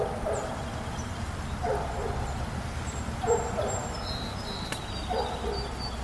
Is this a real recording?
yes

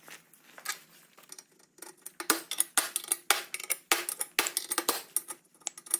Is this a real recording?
yes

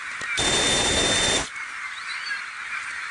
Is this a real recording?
yes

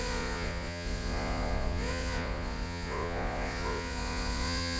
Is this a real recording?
no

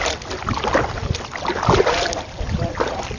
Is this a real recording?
yes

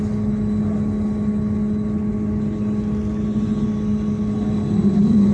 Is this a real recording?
yes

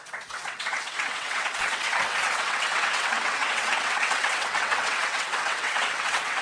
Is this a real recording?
no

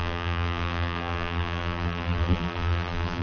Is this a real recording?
no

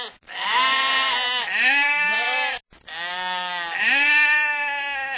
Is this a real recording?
yes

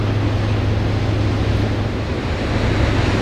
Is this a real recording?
yes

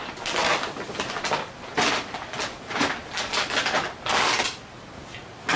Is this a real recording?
yes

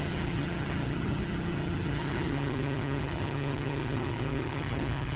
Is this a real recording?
no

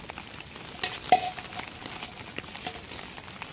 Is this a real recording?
yes